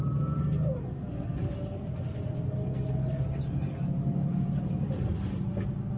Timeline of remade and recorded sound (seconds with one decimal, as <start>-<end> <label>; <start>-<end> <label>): 0.0-0.8 recorded; 0.8-1.5 remade; 1.5-2.6 recorded; 2.6-3.2 remade; 3.2-6.0 recorded